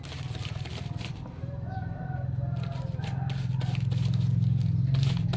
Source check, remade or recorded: recorded